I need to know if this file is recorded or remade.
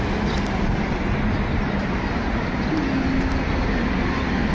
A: recorded